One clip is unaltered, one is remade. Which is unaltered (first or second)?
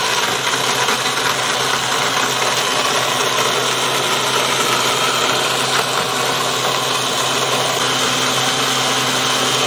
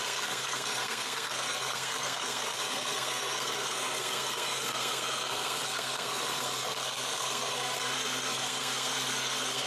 first